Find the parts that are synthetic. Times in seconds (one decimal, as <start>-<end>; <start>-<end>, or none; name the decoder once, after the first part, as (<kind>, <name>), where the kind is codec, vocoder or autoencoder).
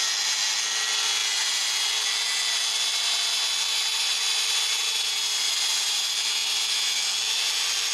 none